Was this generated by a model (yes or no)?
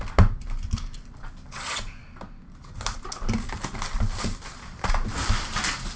no